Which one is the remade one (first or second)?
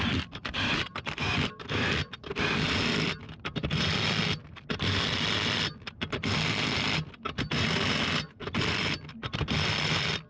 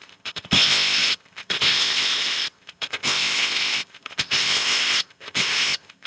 second